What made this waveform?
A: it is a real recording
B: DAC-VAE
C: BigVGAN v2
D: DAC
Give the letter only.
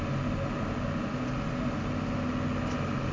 A